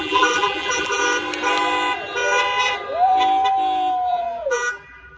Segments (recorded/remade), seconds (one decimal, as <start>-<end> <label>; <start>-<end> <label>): 0.0-1.0 remade; 1.0-4.1 recorded; 4.1-5.2 remade